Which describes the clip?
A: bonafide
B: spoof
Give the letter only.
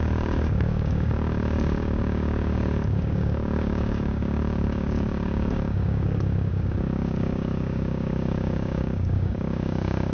B